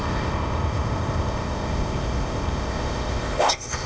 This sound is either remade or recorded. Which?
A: remade